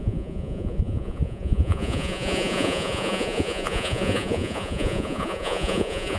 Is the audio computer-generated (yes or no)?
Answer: yes